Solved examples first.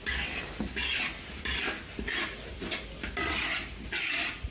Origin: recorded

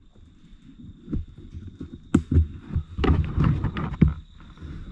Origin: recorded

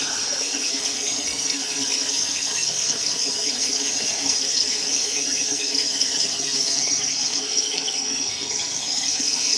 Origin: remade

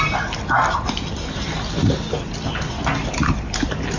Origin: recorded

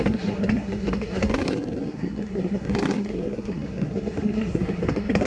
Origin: remade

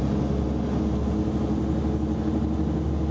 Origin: recorded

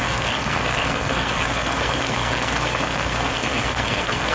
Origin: remade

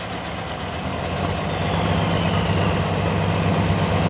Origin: recorded